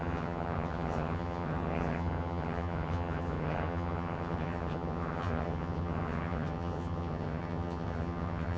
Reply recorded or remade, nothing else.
remade